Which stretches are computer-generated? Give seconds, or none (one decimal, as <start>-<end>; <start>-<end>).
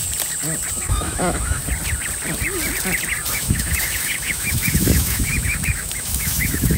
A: 0.7-1.6; 3.3-6.8